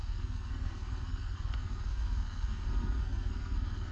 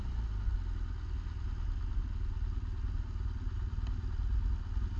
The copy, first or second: first